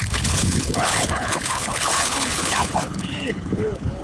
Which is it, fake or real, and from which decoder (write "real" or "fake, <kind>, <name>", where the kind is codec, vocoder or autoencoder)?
fake, codec, HILCodec